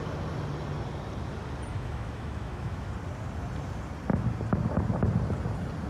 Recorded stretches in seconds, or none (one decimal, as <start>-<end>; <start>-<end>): 0.0-1.7; 2.9-5.9